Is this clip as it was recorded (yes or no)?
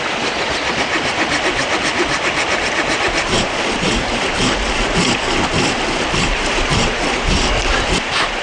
yes